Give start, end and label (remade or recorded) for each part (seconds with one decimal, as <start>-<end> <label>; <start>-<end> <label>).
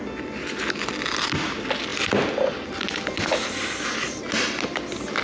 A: 0.0-5.2 recorded